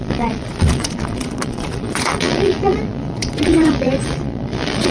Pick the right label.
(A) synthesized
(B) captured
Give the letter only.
A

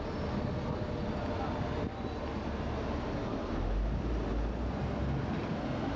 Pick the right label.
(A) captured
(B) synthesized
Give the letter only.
A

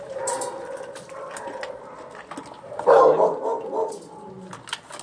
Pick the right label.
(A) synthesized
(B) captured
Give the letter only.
B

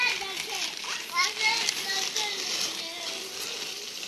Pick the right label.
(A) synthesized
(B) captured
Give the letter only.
B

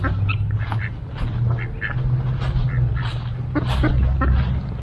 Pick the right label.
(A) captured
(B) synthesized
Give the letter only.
A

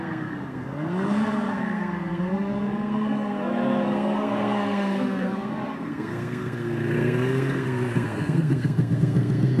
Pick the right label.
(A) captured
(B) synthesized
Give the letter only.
B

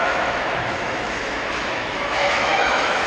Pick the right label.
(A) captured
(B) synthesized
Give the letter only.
B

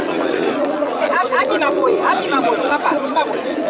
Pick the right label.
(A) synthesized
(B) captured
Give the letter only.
A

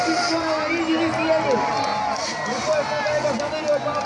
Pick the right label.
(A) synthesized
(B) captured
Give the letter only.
B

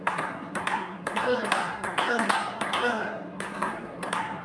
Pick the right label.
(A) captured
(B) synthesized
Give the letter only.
B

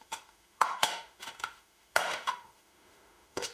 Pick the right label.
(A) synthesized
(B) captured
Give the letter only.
A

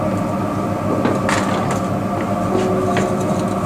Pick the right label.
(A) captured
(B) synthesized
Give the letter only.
A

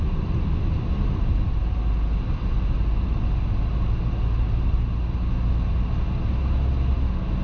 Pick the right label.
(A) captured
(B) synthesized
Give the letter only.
A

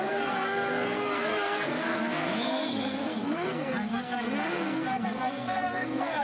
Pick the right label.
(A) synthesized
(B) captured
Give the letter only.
A